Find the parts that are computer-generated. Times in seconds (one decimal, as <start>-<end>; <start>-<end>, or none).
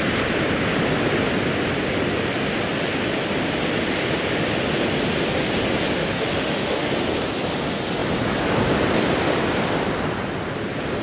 6.0-6.9